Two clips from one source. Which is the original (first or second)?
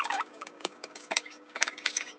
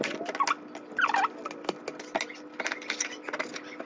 second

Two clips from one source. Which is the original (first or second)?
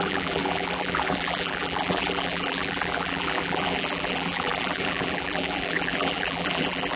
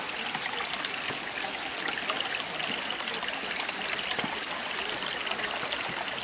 second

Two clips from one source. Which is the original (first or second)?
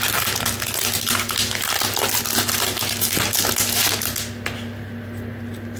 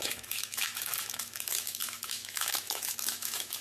first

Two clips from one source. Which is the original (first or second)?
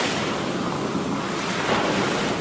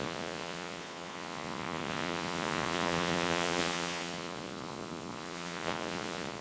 first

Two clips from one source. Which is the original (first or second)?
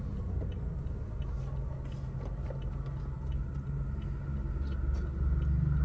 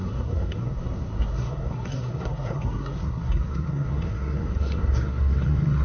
first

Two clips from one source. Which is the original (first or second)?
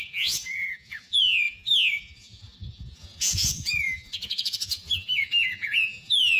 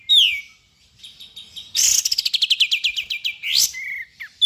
second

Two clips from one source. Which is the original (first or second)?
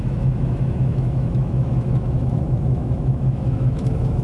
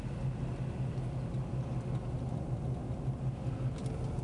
second